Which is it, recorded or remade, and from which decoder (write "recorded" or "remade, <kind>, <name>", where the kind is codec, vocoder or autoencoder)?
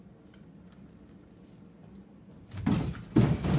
recorded